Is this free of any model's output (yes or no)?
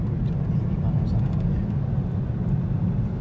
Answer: yes